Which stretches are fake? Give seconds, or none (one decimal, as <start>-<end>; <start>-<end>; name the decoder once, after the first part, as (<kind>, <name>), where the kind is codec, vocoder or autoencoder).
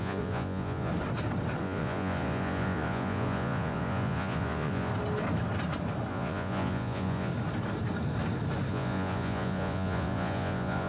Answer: 0.0-0.9 (vocoder, Vocos); 1.6-4.9; 6.1-7.3; 8.7-10.9